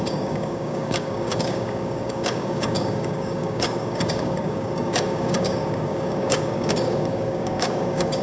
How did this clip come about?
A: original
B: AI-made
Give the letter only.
B